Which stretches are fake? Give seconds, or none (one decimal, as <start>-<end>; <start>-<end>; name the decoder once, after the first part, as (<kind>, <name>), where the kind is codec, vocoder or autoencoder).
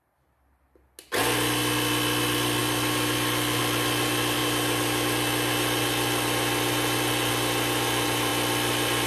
none